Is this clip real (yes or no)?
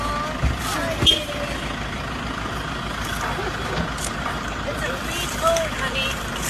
no